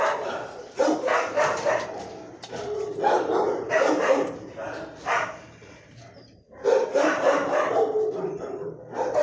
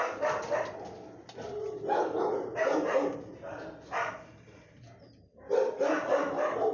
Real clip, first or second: second